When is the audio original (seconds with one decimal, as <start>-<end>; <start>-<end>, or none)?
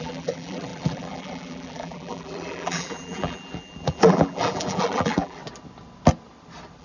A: 5.4-6.8